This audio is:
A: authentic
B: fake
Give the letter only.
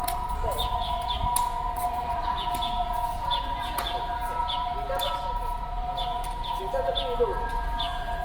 B